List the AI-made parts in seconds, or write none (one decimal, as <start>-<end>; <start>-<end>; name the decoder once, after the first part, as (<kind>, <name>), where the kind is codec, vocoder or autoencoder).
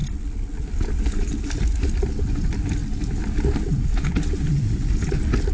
none